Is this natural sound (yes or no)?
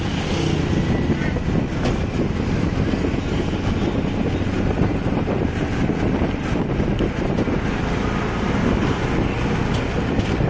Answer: yes